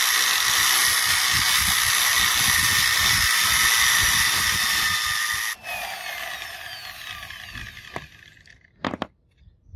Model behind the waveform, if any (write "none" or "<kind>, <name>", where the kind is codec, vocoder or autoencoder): none